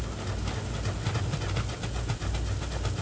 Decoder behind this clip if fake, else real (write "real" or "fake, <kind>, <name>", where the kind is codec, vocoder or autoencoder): real